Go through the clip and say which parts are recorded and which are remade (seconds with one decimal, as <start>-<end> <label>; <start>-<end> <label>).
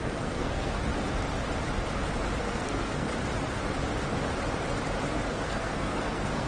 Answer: 0.0-0.8 remade; 0.8-2.4 recorded; 2.4-3.1 remade; 3.1-5.3 recorded; 5.3-6.5 remade